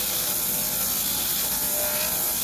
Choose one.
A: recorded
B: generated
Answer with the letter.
A